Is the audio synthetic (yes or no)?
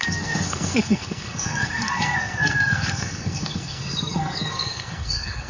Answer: yes